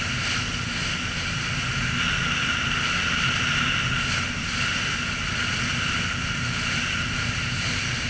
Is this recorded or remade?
recorded